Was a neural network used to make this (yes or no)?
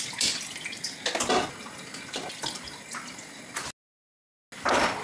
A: no